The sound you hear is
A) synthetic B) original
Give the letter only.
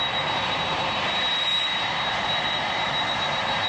A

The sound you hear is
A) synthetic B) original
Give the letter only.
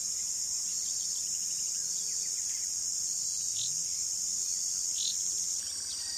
B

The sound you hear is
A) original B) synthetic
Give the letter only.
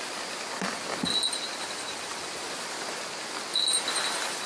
A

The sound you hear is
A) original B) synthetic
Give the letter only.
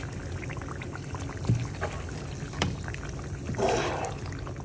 A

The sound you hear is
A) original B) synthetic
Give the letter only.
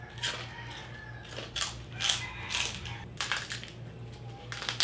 A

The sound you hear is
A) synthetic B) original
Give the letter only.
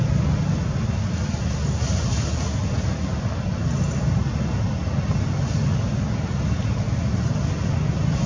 B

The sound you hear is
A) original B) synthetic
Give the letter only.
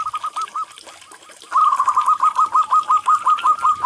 A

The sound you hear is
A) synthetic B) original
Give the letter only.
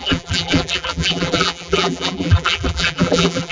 A